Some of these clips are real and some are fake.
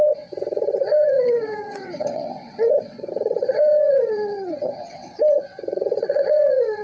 fake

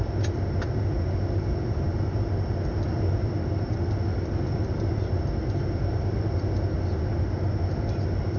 real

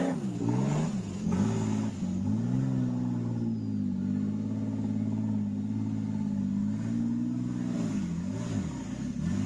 real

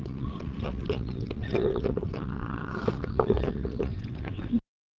fake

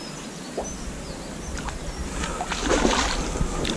real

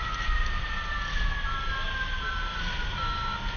real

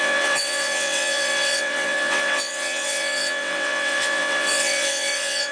fake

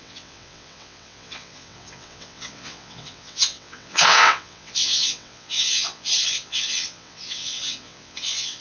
fake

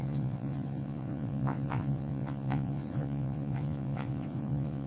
fake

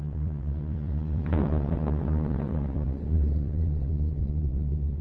fake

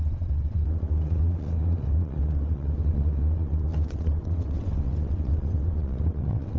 fake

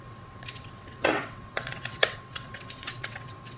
fake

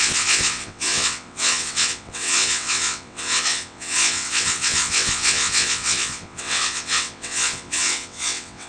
fake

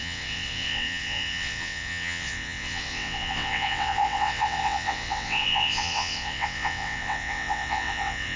fake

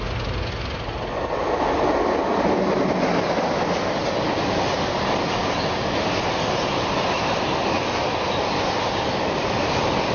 real